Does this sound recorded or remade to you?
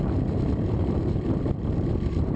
recorded